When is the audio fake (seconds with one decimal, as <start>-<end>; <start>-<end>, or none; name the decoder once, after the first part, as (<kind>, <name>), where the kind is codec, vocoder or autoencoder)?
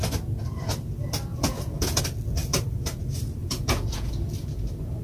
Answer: 1.3-2.0 (vocoder, Vocos); 3.4-4.1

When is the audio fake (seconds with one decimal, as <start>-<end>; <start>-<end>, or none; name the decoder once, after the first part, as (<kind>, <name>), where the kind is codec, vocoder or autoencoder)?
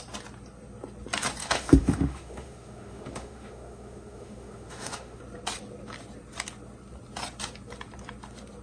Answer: 1.4-5.2 (autoencoder, DAC-VAE)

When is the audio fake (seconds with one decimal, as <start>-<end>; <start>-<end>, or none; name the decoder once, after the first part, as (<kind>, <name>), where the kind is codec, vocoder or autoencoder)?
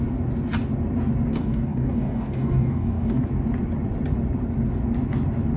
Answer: 1.3-3.2 (codec, DAC)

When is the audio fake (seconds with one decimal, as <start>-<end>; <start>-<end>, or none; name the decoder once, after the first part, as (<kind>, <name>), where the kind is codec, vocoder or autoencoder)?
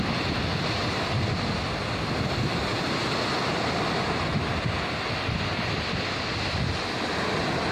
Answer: 4.3-4.8 (vocoder, BigVGAN v2)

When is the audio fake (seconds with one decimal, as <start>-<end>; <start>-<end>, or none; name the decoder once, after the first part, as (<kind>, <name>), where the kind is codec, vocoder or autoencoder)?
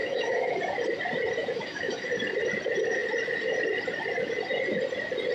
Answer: 0.0-0.6 (autoencoder, DAC-VAE); 1.4-2.1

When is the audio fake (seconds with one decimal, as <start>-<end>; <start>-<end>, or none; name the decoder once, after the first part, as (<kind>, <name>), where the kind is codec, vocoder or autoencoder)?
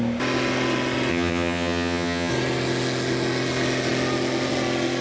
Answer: 1.1-2.3 (vocoder, HiFi-GAN)